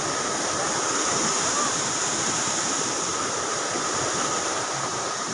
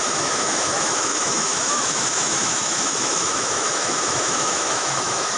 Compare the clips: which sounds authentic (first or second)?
first